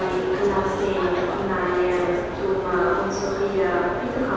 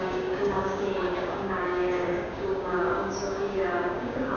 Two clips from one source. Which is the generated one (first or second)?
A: second